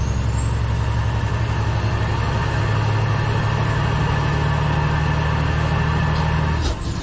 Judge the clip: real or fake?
real